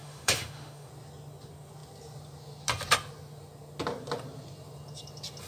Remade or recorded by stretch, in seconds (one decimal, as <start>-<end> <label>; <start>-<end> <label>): 0.0-0.9 remade; 0.9-5.5 recorded